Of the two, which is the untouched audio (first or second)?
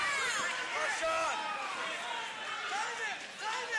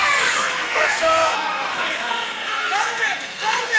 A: first